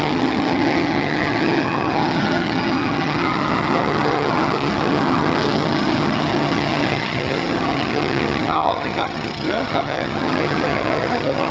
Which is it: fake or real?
fake